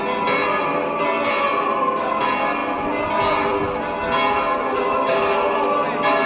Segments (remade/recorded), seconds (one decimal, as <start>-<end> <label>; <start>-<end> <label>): 0.0-6.3 recorded